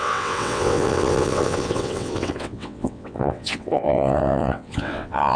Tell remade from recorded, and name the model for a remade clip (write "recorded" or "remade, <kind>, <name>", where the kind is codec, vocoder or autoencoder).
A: remade, vocoder, WaveNeXt